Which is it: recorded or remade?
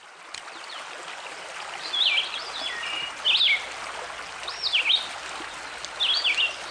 recorded